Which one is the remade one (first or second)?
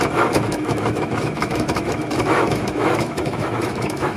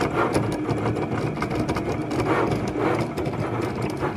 first